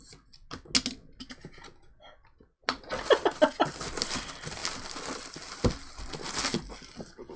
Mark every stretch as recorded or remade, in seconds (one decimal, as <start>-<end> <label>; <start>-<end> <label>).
0.0-7.4 recorded